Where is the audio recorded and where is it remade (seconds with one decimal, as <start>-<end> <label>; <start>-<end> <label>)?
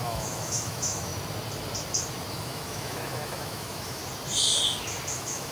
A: 0.0-1.1 remade; 1.1-2.3 recorded; 2.3-4.0 remade; 4.0-5.1 recorded; 5.1-5.5 remade